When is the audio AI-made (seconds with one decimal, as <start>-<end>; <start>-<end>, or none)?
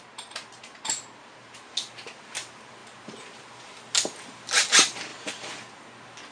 none